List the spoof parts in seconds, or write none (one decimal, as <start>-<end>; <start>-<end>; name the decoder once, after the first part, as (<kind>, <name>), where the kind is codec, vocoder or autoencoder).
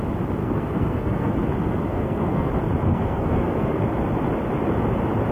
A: 0.4-1.3 (codec, SNAC); 1.9-2.5; 2.9-3.8